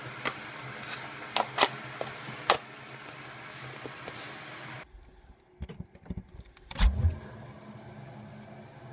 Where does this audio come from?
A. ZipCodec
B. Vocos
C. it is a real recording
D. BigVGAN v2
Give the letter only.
C